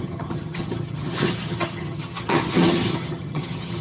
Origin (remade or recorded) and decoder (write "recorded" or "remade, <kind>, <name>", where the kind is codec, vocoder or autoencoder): remade, vocoder, HiFi-GAN